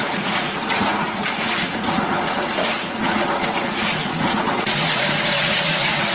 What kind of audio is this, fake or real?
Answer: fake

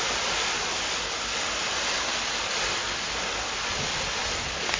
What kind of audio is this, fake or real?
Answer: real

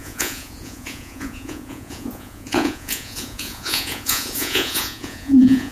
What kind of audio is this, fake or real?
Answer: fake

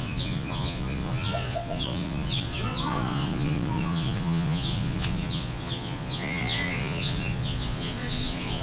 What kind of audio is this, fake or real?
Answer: fake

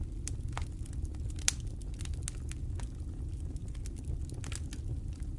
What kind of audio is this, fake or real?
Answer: real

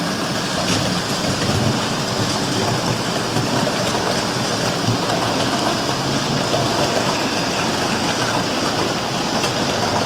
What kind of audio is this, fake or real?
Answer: real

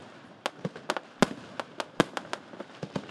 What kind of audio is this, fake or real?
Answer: real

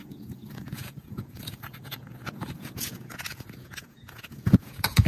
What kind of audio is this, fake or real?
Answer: fake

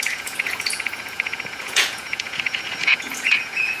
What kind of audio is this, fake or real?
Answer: fake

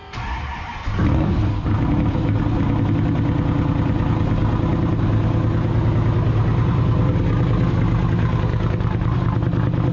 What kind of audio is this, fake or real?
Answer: real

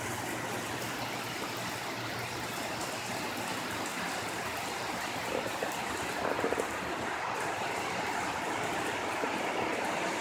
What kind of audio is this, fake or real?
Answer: real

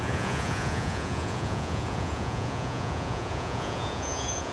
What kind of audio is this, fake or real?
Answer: fake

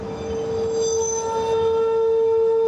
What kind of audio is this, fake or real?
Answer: real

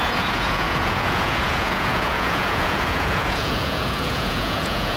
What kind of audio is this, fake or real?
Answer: fake